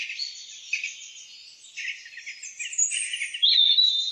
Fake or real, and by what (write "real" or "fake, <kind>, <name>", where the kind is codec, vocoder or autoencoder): real